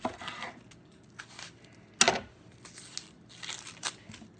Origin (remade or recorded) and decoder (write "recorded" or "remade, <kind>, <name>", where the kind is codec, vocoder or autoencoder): recorded